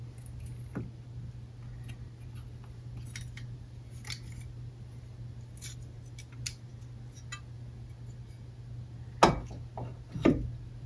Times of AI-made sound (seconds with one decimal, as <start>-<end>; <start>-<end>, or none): none

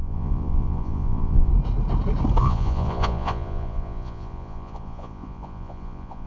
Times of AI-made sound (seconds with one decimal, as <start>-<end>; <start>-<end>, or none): 0.0-1.5; 2.4-6.3

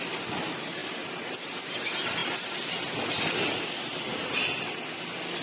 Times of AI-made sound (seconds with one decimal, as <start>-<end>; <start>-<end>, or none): 0.8-1.6; 2.2-4.6

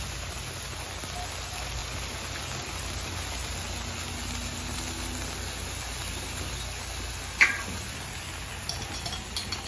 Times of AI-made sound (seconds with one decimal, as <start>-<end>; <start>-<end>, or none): none

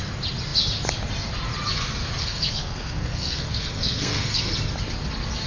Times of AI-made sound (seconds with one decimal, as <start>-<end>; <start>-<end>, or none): 2.2-4.5

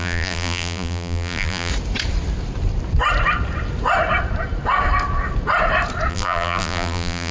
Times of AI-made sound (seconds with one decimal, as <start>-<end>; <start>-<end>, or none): 0.0-1.7; 6.1-7.3

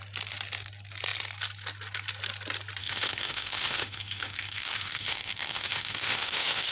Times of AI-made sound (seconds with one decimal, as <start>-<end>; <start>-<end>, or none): 2.8-6.7